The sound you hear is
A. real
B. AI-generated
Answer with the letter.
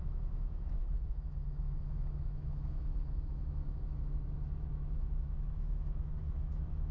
B